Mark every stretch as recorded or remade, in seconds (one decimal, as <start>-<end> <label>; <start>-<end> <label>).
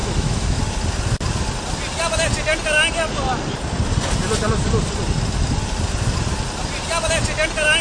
0.0-0.6 remade; 0.6-7.8 recorded